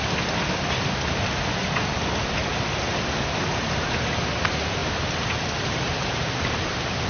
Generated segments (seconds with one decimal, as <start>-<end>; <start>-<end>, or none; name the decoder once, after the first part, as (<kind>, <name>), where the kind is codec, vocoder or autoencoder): none

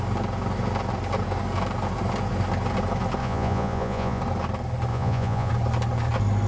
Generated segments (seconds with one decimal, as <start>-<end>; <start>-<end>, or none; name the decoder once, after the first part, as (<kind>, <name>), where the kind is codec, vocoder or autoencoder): 3.2-4.2 (vocoder, Vocos); 4.9-5.5

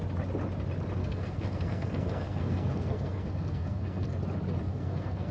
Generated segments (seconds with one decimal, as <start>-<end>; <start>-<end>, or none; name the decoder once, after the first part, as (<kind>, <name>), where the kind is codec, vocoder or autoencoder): 1.0-4.2 (codec, SNAC); 4.7-5.3

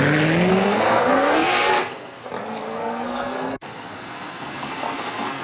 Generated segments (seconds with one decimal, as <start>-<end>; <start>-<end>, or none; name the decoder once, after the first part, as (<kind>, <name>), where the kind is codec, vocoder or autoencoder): 0.5-2.2 (codec, SNAC); 2.7-5.4

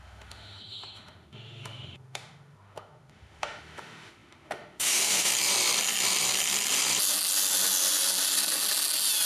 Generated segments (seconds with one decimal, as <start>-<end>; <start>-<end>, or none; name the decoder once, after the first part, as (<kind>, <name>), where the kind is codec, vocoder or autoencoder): 0.0-5.3 (autoencoder, DAC-VAE)

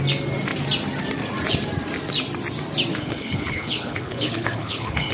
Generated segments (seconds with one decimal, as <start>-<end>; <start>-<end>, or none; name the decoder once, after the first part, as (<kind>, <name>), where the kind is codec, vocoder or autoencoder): 2.9-5.1 (codec, HILCodec)

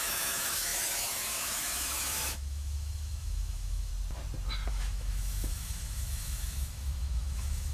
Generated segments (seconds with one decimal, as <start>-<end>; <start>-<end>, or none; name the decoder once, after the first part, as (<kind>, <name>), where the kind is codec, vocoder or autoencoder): 0.0-3.9 (autoencoder, DAC-VAE); 4.7-7.7